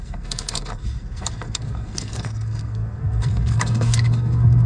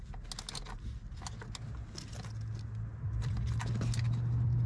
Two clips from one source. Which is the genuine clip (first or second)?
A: second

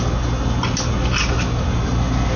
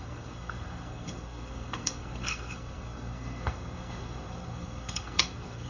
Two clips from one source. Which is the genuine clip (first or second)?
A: first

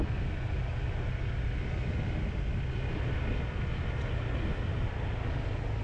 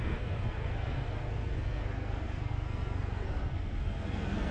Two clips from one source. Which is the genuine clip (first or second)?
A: first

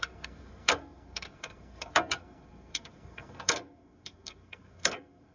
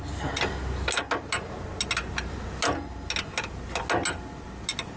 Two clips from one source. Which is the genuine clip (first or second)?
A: second